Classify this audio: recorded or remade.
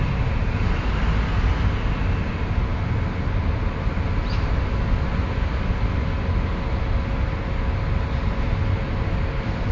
recorded